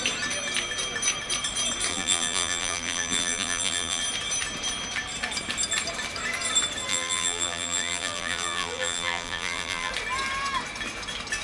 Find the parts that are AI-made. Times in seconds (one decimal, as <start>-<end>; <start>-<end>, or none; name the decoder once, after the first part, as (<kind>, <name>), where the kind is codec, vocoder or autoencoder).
1.9-4.0 (vocoder, BigVGAN v2); 6.9-9.9